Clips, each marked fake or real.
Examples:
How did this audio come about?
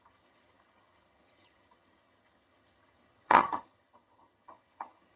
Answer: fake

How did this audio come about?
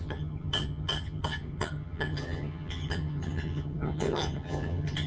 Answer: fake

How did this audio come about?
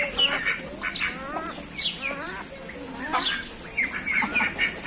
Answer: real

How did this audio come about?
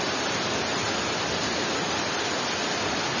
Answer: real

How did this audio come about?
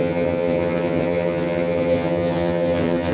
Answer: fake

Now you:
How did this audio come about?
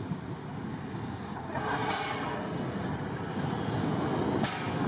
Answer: real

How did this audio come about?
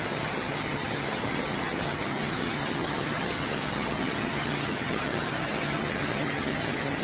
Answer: fake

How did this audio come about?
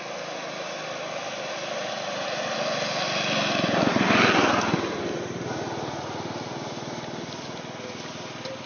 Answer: real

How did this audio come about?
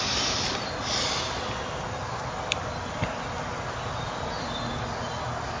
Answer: real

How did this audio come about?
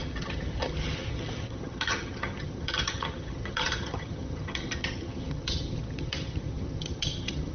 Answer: fake